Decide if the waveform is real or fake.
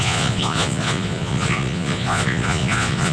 fake